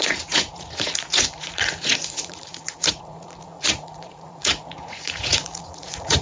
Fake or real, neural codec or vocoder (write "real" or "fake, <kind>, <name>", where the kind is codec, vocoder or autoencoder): fake, vocoder, Vocos